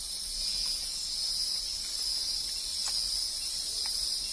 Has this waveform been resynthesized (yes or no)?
no